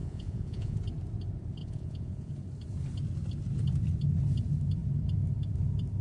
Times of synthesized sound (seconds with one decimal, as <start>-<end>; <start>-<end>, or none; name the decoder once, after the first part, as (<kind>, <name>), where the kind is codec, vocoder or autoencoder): 0.0-0.8 (vocoder, Vocos); 1.6-2.3